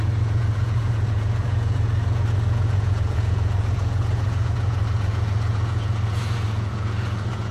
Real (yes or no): no